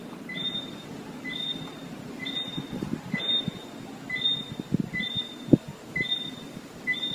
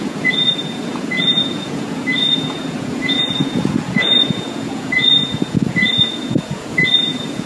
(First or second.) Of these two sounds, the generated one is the second